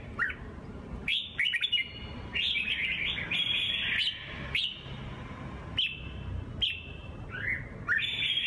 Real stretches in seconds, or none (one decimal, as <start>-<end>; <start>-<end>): 2.7-7.0